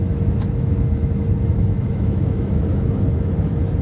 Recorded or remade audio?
remade